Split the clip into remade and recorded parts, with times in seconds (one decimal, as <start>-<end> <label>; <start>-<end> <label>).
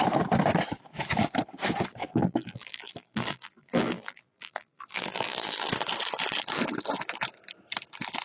0.0-2.0 recorded; 2.0-5.7 remade; 5.7-8.2 recorded